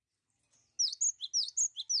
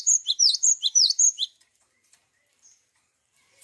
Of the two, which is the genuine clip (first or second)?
first